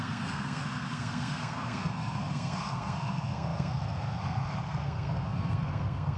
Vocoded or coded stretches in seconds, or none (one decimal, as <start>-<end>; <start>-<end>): 0.0-6.2